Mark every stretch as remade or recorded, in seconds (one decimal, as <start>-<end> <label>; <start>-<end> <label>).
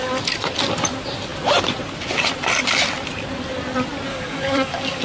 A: 0.0-4.1 recorded; 4.1-5.0 remade